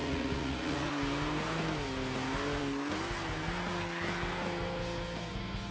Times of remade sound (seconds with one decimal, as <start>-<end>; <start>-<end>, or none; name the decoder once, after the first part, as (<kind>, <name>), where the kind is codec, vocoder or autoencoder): 0.0-0.9 (vocoder, Vocos)